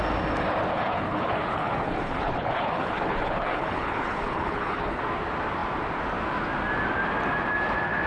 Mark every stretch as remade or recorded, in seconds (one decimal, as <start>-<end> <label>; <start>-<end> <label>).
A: 0.0-0.7 recorded; 0.7-5.0 remade; 5.0-8.1 recorded

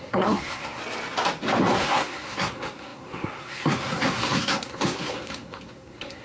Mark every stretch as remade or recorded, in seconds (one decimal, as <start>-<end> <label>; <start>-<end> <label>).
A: 0.0-0.8 remade; 0.8-1.8 recorded; 1.8-6.2 remade

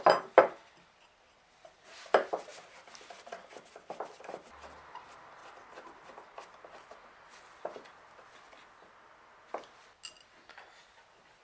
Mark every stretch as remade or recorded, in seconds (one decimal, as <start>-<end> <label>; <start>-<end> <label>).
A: 0.0-11.4 recorded

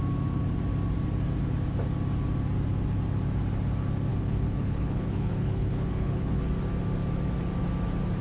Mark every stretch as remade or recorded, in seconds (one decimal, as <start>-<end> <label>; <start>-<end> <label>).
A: 0.0-4.1 recorded; 4.1-6.4 remade; 6.4-8.2 recorded

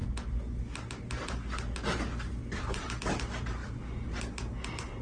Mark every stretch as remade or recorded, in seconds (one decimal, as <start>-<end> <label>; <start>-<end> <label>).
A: 0.0-5.0 recorded